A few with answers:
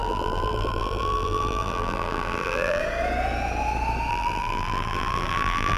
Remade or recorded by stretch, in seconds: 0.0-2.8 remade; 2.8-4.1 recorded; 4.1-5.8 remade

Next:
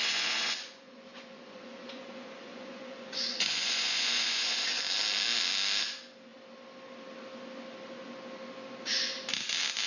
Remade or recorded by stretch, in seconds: 0.0-4.8 remade; 4.8-9.9 recorded